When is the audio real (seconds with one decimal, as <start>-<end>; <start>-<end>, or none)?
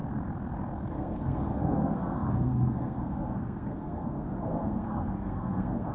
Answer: 0.0-0.9